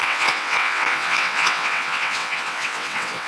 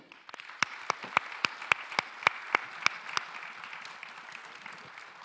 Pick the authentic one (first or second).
second